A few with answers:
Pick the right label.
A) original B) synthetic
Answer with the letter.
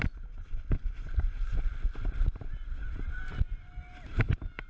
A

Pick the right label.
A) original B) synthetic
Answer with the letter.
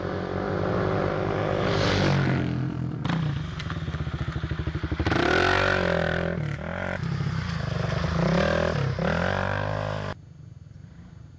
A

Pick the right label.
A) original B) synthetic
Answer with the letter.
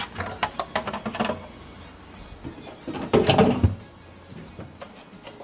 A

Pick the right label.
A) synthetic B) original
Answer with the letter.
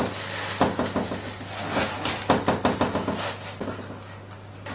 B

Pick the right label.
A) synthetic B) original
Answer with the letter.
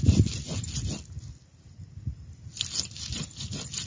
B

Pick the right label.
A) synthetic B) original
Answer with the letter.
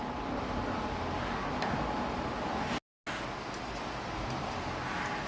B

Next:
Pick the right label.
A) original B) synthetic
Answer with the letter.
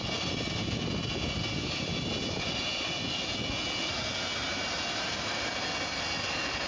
A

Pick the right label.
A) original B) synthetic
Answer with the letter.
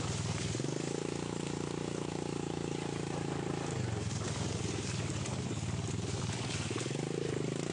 B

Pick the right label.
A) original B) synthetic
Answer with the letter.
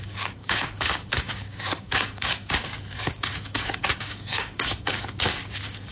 B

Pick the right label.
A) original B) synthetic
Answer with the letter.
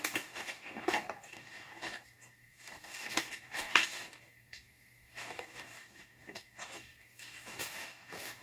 B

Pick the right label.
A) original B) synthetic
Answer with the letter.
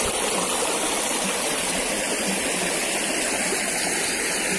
A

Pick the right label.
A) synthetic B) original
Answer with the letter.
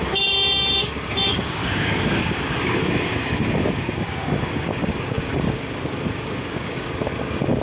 A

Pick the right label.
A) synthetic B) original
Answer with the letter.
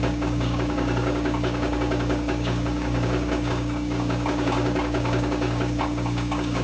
A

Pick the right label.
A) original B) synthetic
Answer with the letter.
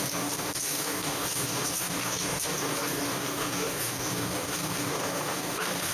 B